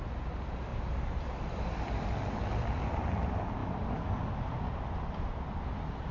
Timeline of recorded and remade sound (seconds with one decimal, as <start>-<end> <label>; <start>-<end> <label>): 0.0-0.7 recorded; 0.7-2.8 remade; 2.8-3.6 recorded; 3.6-4.2 remade; 4.2-6.1 recorded